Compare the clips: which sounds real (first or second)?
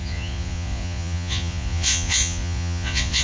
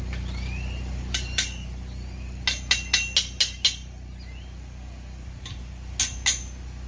second